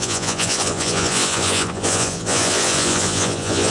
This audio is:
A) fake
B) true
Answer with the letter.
A